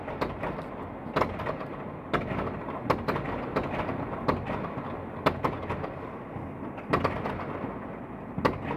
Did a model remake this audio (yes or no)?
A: no